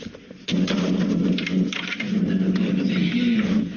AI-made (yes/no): no